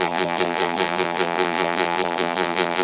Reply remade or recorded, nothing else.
remade